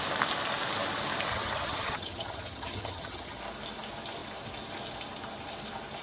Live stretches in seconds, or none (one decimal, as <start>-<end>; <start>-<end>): 0.0-1.3; 3.4-6.0